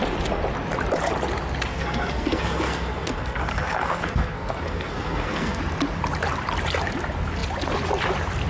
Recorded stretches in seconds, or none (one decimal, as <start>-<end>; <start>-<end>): 0.0-1.7; 5.6-8.5